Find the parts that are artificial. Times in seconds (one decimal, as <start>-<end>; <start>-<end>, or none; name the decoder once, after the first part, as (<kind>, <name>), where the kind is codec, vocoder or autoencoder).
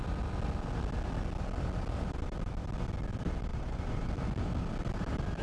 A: 3.5-4.1 (vocoder, Vocos)